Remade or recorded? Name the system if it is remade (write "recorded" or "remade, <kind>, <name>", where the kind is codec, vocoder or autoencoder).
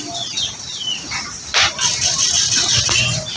recorded